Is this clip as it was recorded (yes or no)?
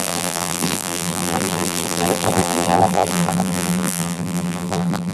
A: no